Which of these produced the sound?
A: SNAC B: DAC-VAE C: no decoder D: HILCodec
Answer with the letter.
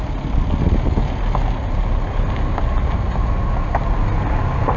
C